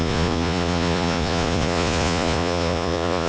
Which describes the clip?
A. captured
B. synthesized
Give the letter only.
B